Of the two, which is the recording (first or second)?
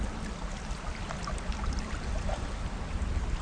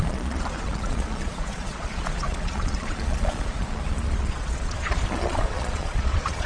first